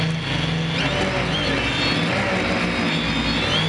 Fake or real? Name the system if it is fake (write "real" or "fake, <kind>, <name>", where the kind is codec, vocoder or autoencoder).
real